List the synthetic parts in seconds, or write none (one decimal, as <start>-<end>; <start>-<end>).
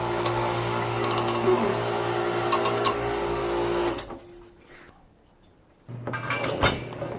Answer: 0.0-1.7; 2.6-3.4; 4.6-5.2; 6.7-7.2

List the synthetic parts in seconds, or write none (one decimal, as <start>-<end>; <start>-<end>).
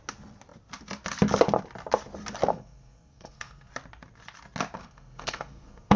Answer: 2.5-3.7; 4.8-6.0